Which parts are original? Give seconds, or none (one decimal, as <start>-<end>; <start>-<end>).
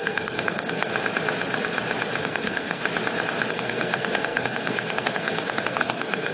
0.9-2.2; 2.8-3.5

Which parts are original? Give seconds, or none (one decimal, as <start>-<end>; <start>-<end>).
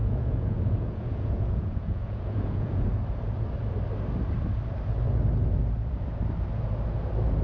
3.0-7.4